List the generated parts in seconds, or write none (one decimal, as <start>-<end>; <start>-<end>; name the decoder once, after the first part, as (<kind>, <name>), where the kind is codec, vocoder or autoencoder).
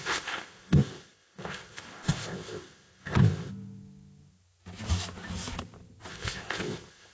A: 0.0-3.5 (codec, ZipCodec); 6.1-7.1